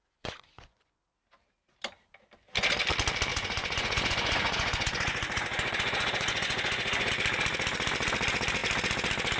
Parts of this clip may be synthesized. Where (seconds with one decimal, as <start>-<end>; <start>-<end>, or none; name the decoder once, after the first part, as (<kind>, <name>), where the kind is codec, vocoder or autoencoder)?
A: 0.0-1.0 (vocoder, Vocos); 3.3-7.1